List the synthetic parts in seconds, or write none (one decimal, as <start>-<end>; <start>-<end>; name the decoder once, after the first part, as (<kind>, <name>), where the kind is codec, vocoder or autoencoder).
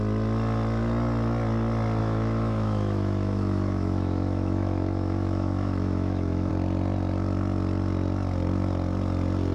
2.0-6.5 (autoencoder, DAC-VAE)